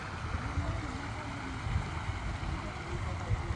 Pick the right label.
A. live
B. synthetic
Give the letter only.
A